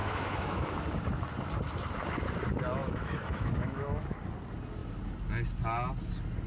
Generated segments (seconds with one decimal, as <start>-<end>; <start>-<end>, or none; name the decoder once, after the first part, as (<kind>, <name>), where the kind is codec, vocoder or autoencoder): 0.0-0.8 (autoencoder, DAC-VAE); 2.8-4.2